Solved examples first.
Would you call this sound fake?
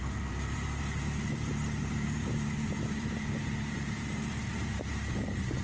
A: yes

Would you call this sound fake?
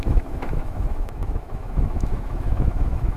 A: yes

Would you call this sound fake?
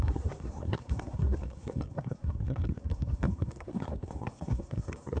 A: yes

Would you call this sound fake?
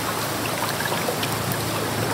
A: no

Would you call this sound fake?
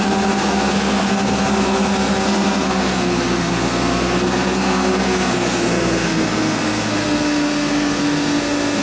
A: yes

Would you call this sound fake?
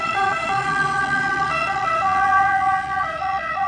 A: yes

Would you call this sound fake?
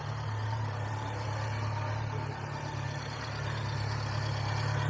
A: no